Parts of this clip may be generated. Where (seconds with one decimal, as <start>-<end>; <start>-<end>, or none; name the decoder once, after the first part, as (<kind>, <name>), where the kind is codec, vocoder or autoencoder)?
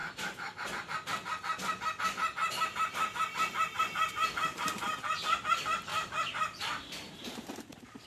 5.9-8.1 (vocoder, BigVGAN v2)